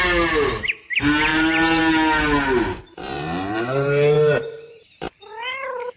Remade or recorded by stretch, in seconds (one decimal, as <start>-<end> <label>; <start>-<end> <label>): 0.0-1.3 recorded; 1.3-1.8 remade; 1.8-3.0 recorded; 3.0-6.0 remade

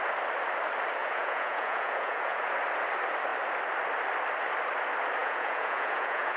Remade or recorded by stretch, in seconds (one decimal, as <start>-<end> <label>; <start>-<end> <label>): 0.0-1.0 recorded; 1.0-2.5 remade; 2.5-5.2 recorded; 5.2-6.4 remade

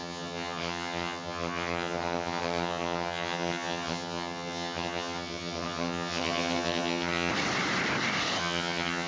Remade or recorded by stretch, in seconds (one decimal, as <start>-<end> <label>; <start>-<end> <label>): 0.0-7.3 remade; 7.3-8.4 recorded; 8.4-9.1 remade

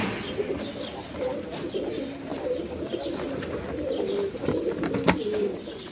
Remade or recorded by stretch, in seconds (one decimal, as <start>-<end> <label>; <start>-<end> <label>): 0.0-2.3 recorded; 2.3-4.2 remade; 4.2-5.9 recorded

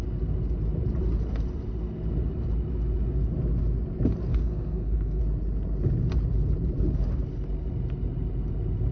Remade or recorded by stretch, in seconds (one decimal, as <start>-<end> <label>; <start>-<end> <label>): 0.0-4.3 recorded; 4.3-5.2 remade; 5.2-8.9 recorded

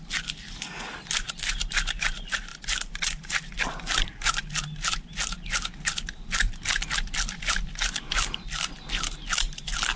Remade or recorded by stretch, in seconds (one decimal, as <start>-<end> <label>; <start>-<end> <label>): 0.0-2.5 recorded; 2.5-4.6 remade; 4.6-10.0 recorded

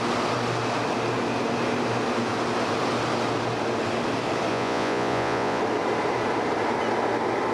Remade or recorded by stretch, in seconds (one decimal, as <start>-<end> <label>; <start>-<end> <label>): 0.0-4.5 recorded; 4.5-5.6 remade; 5.6-7.5 recorded

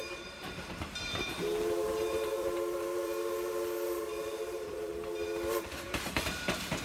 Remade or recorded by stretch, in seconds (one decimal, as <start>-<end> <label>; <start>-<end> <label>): 0.0-4.9 remade; 4.9-5.5 recorded; 5.5-6.8 remade